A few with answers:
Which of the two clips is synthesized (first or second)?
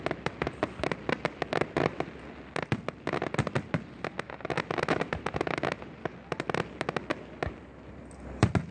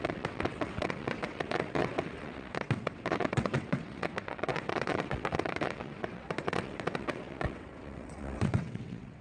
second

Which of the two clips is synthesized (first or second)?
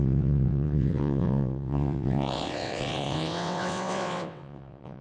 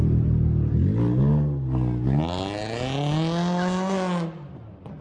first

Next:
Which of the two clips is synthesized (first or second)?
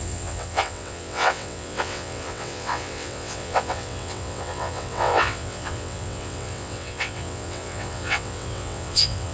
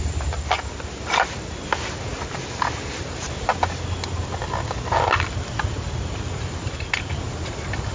first